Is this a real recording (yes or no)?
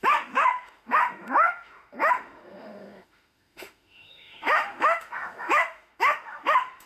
no